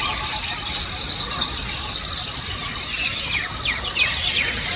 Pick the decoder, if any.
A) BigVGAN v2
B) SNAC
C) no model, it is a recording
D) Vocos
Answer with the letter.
C